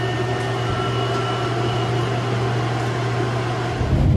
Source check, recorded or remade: recorded